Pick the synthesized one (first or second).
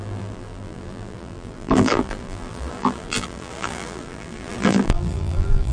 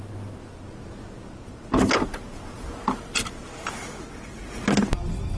first